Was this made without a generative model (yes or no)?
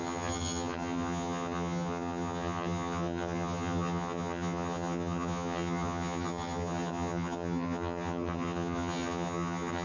no